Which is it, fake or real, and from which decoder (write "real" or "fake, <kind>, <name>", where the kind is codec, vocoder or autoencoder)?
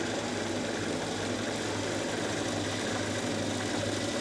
real